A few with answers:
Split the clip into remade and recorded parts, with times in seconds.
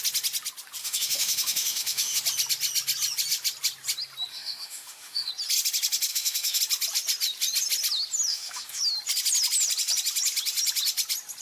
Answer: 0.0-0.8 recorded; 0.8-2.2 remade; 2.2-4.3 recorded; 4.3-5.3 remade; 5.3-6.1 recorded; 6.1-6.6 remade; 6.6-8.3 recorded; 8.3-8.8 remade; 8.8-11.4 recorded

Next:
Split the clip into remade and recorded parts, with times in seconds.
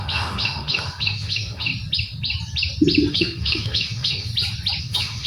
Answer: 0.0-1.7 remade; 1.7-3.1 recorded; 3.1-4.3 remade; 4.3-4.8 recorded; 4.8-5.3 remade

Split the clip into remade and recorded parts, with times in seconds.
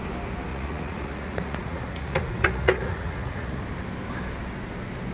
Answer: 0.0-0.5 recorded; 0.5-3.6 remade; 3.6-5.1 recorded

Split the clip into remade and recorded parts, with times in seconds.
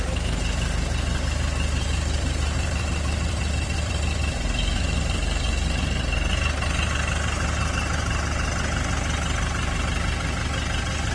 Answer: 0.0-1.8 recorded; 1.8-6.3 remade; 6.3-11.1 recorded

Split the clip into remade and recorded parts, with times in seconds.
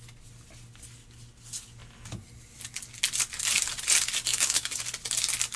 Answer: 0.0-4.3 recorded; 4.3-4.8 remade; 4.8-5.6 recorded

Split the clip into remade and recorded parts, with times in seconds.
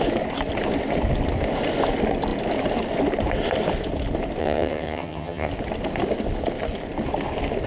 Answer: 0.0-4.4 recorded; 4.4-5.5 remade; 5.5-7.7 recorded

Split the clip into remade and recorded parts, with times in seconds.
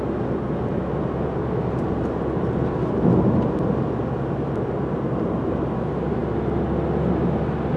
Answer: 0.0-7.8 recorded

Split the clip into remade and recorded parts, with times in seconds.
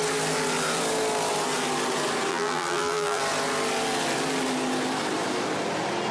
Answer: 0.0-2.3 recorded; 2.3-3.2 remade; 3.2-6.1 recorded